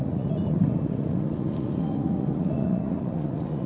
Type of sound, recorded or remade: remade